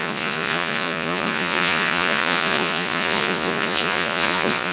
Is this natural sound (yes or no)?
no